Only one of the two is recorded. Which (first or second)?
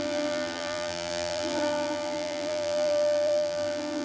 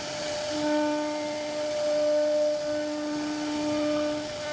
second